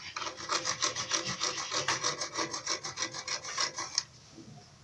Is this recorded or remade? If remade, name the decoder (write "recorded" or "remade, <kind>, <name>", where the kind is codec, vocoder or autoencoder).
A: recorded